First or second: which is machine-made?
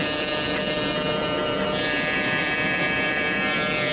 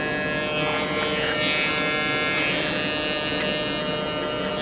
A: first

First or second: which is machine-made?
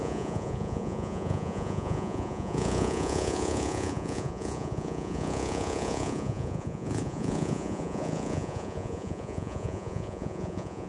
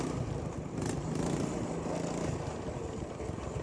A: first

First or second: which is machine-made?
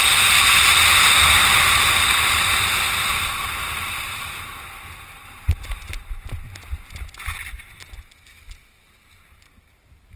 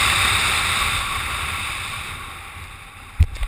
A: second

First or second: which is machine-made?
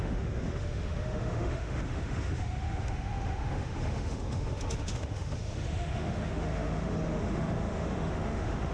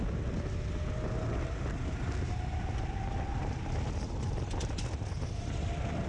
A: first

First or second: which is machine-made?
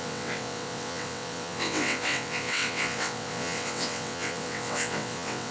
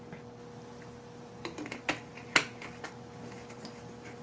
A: first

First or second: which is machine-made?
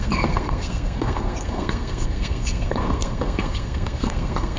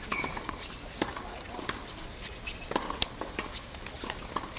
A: first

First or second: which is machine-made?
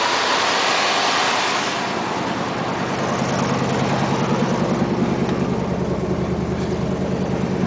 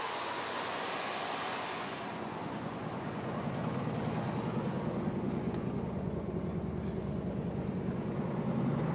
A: second